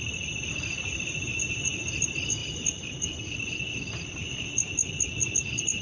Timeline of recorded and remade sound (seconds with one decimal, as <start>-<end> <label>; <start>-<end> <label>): 0.0-5.8 recorded